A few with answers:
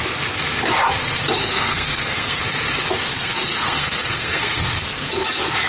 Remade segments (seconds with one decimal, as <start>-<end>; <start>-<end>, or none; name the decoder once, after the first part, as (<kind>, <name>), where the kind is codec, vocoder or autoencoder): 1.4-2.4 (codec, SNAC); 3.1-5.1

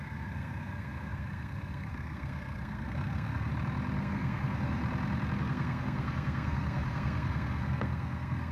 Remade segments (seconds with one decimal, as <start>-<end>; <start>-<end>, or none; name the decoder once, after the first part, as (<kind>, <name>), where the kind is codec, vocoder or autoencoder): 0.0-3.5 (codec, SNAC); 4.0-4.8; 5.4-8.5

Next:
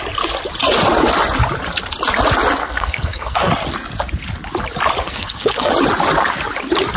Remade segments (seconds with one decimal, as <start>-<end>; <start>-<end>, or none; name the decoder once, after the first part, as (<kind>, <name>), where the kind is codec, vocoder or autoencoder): 2.6-3.5 (codec, SNAC); 5.0-5.7

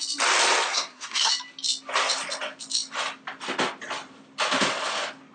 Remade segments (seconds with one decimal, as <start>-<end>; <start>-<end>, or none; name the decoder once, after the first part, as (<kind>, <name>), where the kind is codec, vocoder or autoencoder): 0.7-1.3 (codec, SNAC)

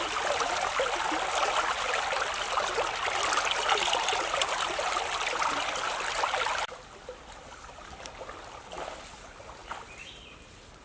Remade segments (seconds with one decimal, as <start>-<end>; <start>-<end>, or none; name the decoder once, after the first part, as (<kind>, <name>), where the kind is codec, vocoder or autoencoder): none